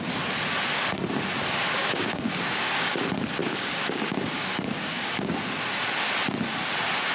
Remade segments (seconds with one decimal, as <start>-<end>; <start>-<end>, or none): 1.8-3.0; 3.4-5.3